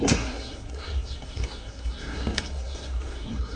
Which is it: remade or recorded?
remade